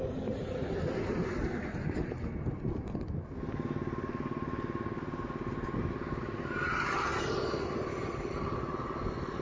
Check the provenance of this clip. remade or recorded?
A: recorded